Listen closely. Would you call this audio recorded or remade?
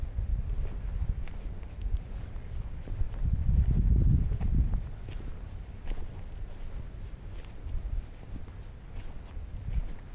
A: recorded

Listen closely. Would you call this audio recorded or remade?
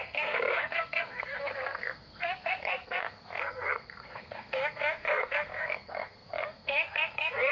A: remade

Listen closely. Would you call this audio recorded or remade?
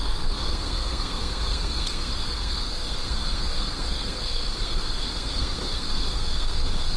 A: remade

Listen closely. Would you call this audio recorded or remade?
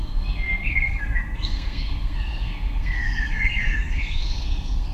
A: remade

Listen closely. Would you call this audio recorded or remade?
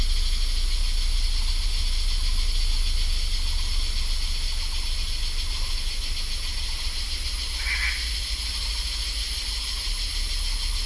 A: recorded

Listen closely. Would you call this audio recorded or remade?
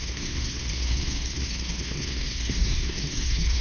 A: remade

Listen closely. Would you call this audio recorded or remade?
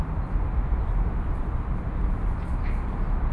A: recorded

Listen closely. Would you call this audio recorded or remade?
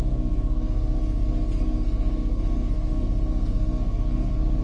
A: remade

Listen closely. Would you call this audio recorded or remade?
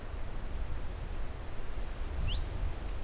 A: recorded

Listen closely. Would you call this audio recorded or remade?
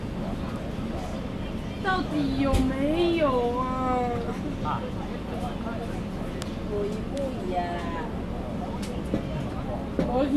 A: recorded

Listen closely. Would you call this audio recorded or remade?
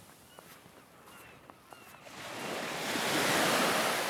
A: recorded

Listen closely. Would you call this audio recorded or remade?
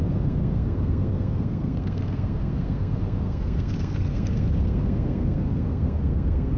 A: remade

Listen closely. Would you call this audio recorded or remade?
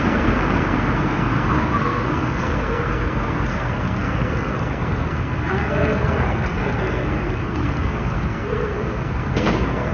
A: remade